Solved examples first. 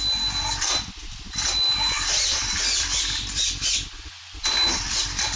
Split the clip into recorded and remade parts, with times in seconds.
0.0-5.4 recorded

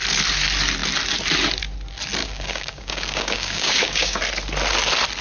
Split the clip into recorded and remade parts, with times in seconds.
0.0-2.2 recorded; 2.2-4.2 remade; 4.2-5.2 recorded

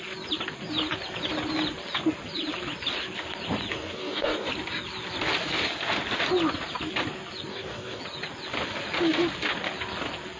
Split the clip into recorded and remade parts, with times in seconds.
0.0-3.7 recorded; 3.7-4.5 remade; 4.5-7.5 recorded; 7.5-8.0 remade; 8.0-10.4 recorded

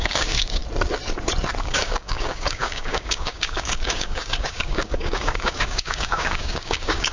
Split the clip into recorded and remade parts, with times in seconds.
0.0-0.6 remade; 0.6-1.6 recorded; 1.6-7.1 remade

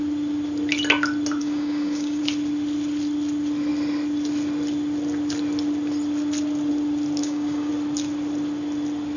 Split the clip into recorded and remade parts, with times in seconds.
0.0-1.4 recorded; 1.4-2.2 remade; 2.2-7.2 recorded; 7.2-7.7 remade; 7.7-9.2 recorded

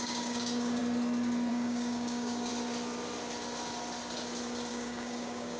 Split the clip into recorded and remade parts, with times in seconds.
0.0-0.8 remade; 0.8-1.5 recorded; 1.5-2.5 remade; 2.5-4.7 recorded; 4.7-5.6 remade